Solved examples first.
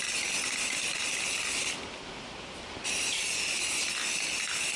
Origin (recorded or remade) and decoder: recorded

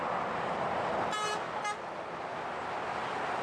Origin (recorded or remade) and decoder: recorded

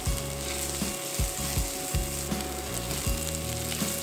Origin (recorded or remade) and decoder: recorded